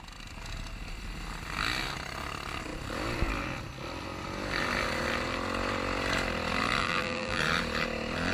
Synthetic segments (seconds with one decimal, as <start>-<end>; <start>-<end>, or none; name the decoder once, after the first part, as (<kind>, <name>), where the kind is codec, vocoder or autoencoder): 6.8-7.4 (vocoder, BigVGAN v2)